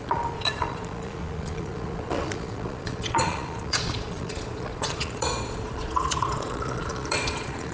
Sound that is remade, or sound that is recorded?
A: remade